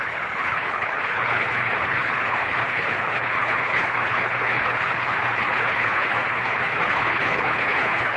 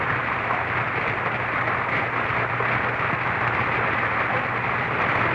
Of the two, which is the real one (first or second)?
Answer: second